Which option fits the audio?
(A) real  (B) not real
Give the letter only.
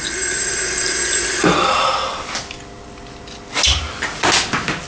A